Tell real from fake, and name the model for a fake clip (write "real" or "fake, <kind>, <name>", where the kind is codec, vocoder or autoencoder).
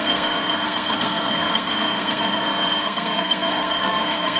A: fake, codec, SNAC